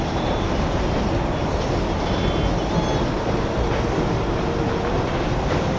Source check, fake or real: real